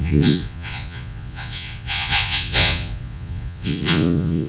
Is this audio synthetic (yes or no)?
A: yes